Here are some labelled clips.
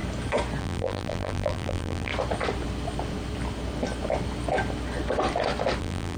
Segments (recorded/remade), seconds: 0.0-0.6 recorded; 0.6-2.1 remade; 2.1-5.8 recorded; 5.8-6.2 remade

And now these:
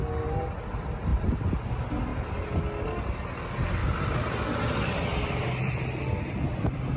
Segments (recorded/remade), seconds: 0.0-1.1 recorded; 1.1-1.7 remade; 1.7-3.8 recorded; 3.8-7.0 remade

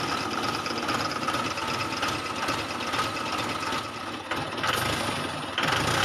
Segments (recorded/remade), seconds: 0.0-6.0 recorded